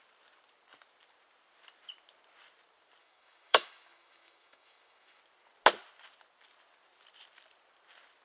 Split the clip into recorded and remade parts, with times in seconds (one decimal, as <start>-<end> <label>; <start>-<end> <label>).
0.0-3.0 recorded; 3.0-5.2 remade; 5.2-8.2 recorded